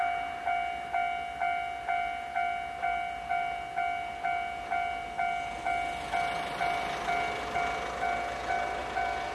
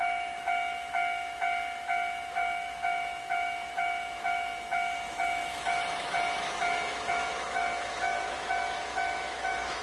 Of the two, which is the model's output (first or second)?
second